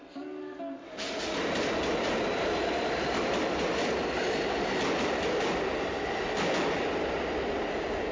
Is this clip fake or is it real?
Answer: real